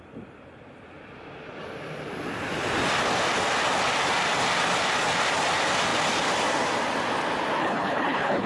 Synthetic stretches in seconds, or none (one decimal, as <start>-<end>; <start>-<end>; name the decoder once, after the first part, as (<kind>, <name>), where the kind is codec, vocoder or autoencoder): 7.6-8.5 (codec, HILCodec)